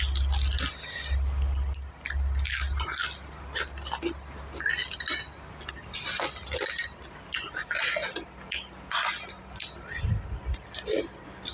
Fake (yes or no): no